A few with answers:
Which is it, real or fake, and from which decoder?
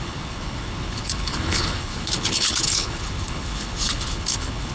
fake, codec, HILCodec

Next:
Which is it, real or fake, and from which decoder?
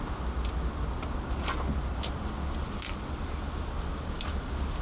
real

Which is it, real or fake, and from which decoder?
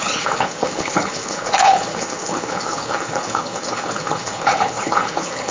fake, codec, HILCodec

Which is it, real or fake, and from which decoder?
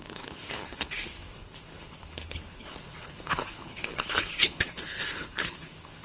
fake, codec, HILCodec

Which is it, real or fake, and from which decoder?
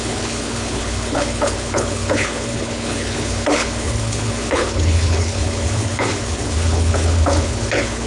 fake, codec, HILCodec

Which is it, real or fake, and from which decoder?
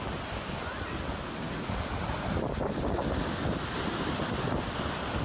real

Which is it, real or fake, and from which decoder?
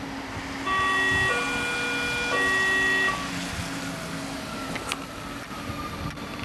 real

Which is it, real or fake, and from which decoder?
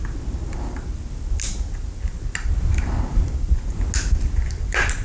real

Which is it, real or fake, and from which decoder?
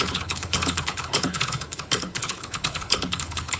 fake, codec, HILCodec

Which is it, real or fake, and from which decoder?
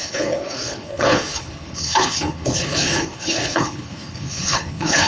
fake, codec, HILCodec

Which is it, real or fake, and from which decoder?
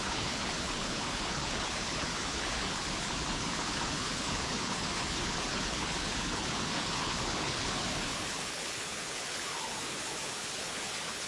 fake, codec, HILCodec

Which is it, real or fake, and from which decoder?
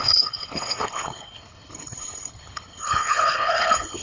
fake, codec, HILCodec